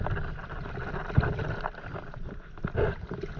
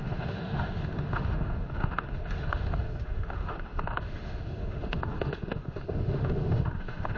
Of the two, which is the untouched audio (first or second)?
first